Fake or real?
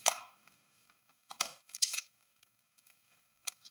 fake